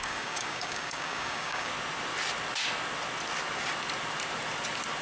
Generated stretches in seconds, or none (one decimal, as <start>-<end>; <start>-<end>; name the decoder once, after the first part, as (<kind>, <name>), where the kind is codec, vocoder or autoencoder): 0.0-1.7 (codec, DAC)